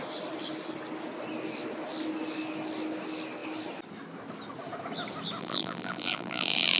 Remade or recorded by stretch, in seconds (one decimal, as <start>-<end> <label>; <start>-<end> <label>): 0.0-5.4 recorded; 5.4-6.8 remade

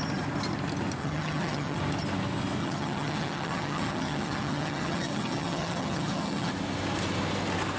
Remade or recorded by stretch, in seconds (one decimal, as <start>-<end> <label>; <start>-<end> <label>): 0.0-1.0 recorded; 1.0-1.8 remade; 1.8-2.6 recorded; 2.6-6.5 remade; 6.5-7.8 recorded

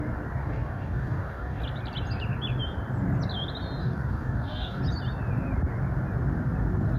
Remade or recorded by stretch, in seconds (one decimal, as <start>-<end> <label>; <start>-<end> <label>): 0.0-0.4 recorded; 0.4-1.6 remade; 1.6-3.8 recorded; 3.8-4.8 remade; 4.8-7.0 recorded

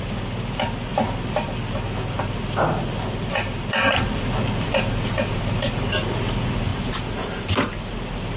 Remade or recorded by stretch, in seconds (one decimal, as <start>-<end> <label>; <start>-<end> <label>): 0.0-0.9 recorded; 0.9-4.7 remade; 4.7-8.4 recorded

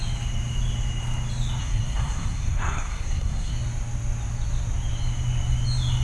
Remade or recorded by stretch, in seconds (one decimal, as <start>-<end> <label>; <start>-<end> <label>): 0.0-1.6 recorded; 1.6-3.5 remade; 3.5-6.0 recorded